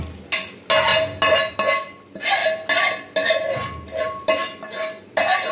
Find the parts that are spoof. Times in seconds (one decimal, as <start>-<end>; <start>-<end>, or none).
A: none